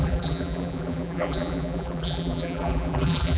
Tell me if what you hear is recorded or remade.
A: remade